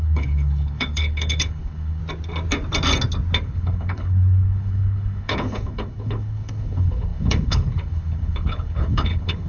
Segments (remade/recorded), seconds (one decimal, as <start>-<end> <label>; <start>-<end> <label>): 0.0-2.0 remade; 2.0-3.4 recorded; 3.4-9.5 remade